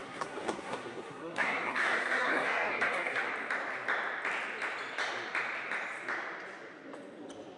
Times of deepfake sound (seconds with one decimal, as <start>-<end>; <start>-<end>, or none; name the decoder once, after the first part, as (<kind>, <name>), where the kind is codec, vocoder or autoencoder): 0.0-3.3 (codec, SNAC)